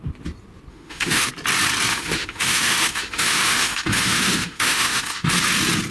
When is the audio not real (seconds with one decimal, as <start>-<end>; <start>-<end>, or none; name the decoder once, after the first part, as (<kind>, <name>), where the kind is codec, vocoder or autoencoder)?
0.7-1.3 (autoencoder, DAC-VAE); 1.9-5.3